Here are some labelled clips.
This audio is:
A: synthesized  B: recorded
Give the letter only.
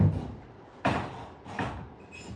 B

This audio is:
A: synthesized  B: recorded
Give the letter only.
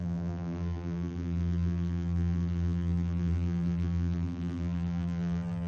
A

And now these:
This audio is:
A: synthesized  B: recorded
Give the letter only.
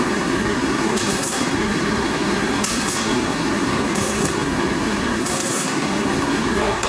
A